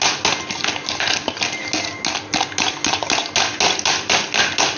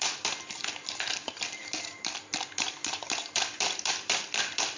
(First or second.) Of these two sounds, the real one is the first